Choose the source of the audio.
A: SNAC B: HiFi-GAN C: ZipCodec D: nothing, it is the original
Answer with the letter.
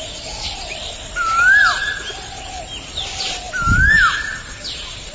D